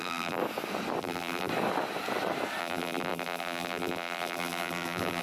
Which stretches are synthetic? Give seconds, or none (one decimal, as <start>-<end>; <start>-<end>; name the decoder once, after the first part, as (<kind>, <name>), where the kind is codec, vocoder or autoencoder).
0.0-0.4 (vocoder, BigVGAN v2); 1.0-1.5; 2.6-5.2